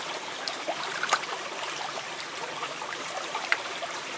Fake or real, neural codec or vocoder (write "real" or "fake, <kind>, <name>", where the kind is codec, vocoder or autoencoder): fake, vocoder, BigVGAN v2